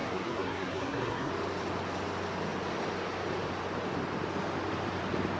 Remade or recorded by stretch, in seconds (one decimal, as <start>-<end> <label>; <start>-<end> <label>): 0.0-1.3 remade; 1.3-5.4 recorded